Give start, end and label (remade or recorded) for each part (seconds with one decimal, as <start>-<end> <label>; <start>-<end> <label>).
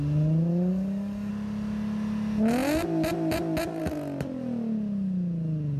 0.0-0.5 recorded; 0.5-1.3 remade; 1.3-5.8 recorded